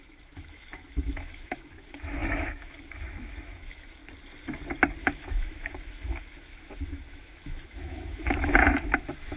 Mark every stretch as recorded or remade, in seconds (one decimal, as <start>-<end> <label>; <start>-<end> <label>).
0.0-4.0 remade; 4.0-5.0 recorded; 5.0-9.4 remade